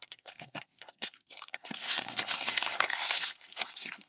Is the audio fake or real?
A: fake